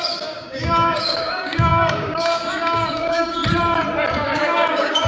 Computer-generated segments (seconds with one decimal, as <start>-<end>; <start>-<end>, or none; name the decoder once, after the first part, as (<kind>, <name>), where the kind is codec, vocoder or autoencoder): 0.0-3.4 (codec, DAC); 4.1-5.1